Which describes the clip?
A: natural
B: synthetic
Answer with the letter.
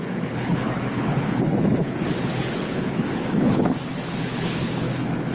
B